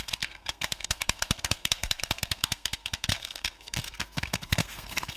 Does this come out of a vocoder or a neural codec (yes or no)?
yes